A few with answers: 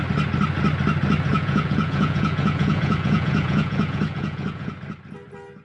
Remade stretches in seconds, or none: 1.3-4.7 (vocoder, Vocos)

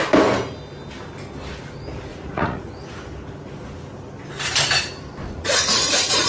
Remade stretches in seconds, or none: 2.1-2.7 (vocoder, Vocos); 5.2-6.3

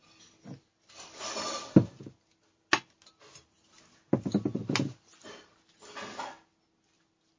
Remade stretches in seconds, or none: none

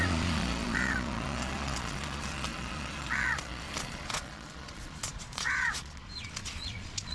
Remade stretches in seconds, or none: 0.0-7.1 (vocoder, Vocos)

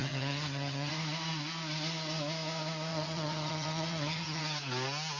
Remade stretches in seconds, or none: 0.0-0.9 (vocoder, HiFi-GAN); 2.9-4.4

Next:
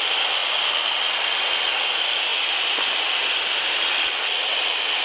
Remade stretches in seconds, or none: none

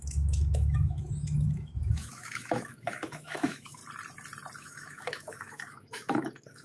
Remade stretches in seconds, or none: 0.0-3.8 (autoencoder, DAC-VAE); 4.6-6.6

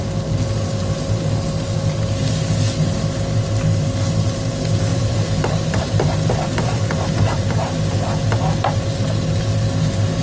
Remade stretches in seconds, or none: 4.9-7.4 (vocoder, BigVGAN v2)